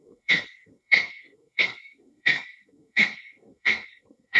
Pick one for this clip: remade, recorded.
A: remade